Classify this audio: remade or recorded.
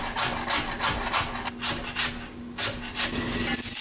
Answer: recorded